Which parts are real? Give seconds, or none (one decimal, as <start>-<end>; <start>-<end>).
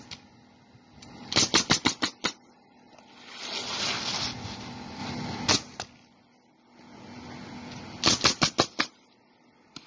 0.0-9.9